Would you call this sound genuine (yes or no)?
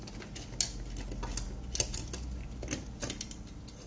yes